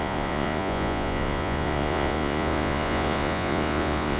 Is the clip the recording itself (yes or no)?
no